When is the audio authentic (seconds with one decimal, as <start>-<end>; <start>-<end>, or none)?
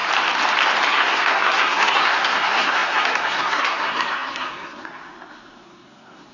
0.0-0.9